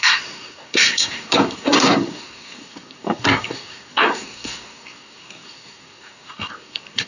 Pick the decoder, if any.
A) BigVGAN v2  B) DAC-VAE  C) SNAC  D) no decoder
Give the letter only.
C